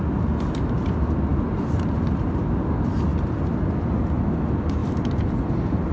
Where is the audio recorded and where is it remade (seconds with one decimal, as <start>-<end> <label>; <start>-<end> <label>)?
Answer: 0.0-4.8 recorded; 4.8-5.4 remade; 5.4-5.9 recorded